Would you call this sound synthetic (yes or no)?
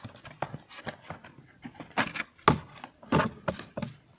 no